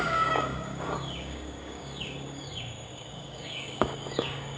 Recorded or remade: remade